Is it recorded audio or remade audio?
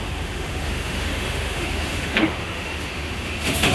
remade